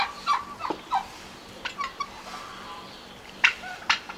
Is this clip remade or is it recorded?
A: recorded